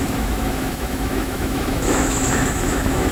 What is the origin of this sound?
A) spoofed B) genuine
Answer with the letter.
A